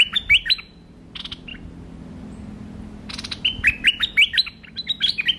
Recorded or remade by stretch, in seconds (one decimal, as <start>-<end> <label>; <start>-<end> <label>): 0.0-5.4 recorded